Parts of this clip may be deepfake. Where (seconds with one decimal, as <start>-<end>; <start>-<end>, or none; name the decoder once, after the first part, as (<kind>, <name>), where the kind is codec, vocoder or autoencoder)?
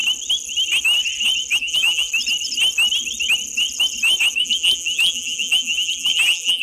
1.6-2.1 (vocoder, BigVGAN v2); 4.4-6.6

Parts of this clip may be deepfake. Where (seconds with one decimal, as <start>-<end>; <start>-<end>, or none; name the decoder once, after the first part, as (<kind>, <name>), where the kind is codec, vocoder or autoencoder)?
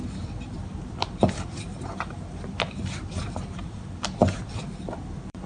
0.0-5.5 (vocoder, BigVGAN v2)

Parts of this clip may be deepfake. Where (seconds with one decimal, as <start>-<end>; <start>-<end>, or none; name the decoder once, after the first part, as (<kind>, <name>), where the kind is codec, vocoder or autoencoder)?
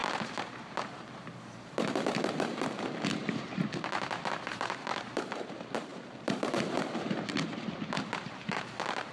0.0-3.6 (vocoder, BigVGAN v2); 4.6-9.1